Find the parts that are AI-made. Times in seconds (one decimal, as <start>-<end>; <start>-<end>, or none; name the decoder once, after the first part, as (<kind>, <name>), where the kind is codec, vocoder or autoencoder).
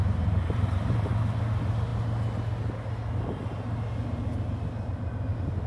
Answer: 0.0-1.1 (vocoder, BigVGAN v2)